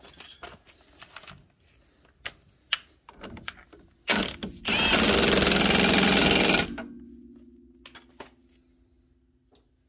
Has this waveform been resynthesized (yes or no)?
no